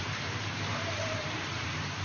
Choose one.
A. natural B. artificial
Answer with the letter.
B